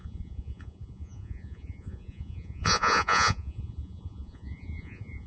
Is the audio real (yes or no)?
no